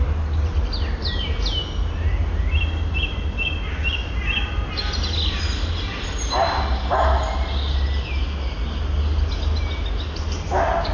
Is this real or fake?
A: real